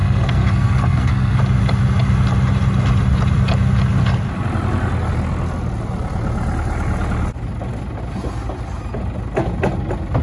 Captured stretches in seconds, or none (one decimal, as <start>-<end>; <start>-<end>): 1.4-10.2